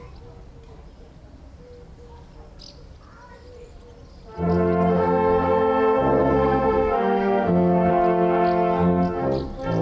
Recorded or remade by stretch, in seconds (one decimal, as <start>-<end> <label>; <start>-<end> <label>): 0.0-6.2 recorded; 6.2-7.9 remade; 7.9-9.8 recorded